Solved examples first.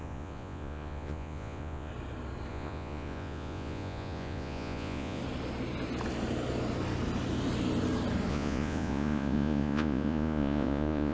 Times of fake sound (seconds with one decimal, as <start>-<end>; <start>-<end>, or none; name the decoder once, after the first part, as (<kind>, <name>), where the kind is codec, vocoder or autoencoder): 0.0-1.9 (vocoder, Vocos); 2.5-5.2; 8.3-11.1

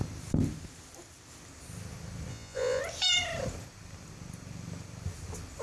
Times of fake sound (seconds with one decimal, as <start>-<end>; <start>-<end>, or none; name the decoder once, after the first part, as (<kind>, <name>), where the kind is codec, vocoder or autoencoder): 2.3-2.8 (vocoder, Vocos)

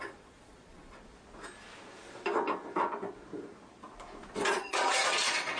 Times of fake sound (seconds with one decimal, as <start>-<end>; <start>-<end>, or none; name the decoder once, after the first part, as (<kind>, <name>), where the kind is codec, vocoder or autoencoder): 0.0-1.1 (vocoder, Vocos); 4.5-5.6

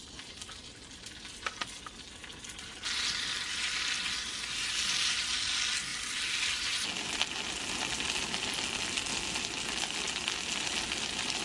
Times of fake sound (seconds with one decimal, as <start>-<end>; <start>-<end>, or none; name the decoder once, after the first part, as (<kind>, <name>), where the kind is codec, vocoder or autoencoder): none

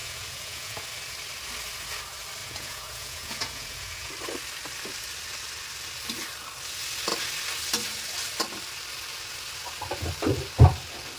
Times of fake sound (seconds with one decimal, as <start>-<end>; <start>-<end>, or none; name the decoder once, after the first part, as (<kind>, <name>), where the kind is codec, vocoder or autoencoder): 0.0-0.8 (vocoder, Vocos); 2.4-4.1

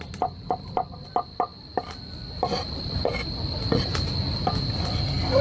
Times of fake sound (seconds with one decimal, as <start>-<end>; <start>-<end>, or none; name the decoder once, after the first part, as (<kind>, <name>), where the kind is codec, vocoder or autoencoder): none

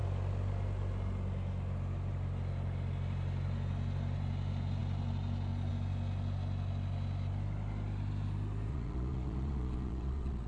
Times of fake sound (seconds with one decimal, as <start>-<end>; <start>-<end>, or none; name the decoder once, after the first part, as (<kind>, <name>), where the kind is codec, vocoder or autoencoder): 8.7-10.5 (vocoder, Vocos)

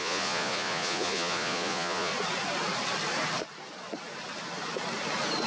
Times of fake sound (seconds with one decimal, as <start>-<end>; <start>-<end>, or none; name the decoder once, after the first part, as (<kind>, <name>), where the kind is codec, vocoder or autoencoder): 0.0-2.1 (vocoder, Vocos)